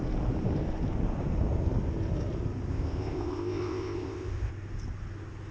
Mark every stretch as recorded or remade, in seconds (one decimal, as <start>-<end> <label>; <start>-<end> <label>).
0.0-2.7 recorded; 2.7-4.5 remade; 4.5-5.5 recorded